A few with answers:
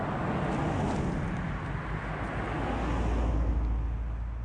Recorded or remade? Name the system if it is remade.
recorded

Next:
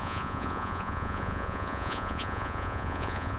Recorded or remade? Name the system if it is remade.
remade, vocoder, Vocos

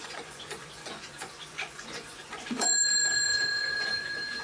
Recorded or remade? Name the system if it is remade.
remade, vocoder, Vocos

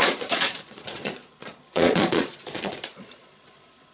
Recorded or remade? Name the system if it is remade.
remade, vocoder, Vocos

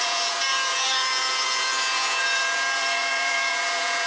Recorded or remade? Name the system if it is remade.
remade, vocoder, Vocos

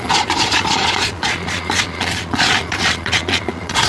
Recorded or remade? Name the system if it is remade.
remade, vocoder, Vocos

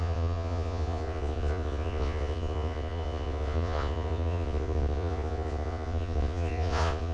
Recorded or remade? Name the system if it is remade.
remade, vocoder, Vocos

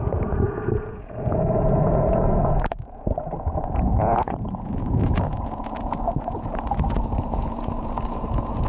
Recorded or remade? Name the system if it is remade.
remade, vocoder, Vocos